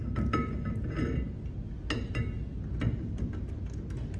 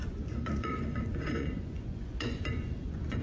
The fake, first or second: second